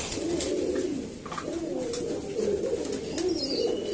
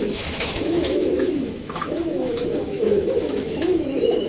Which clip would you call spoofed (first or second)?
second